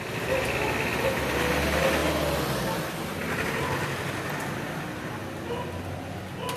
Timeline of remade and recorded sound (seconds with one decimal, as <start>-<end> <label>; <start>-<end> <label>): 0.0-6.6 recorded